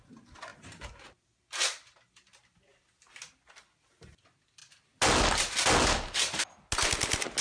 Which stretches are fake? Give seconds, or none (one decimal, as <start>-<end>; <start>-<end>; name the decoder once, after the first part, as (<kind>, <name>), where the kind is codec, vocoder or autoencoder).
0.5-2.6 (vocoder, BigVGAN v2)